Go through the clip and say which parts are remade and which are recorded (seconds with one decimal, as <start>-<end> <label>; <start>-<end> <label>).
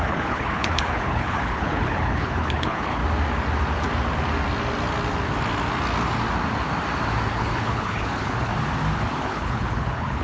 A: 0.0-3.0 remade; 3.0-7.3 recorded; 7.3-8.5 remade; 8.5-9.2 recorded; 9.2-10.2 remade